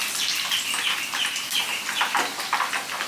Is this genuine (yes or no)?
yes